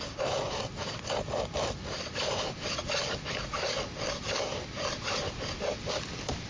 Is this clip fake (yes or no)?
yes